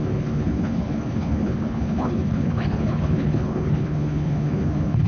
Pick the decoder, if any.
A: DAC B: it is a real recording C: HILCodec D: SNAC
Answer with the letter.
C